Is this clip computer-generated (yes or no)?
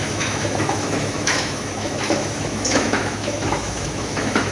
yes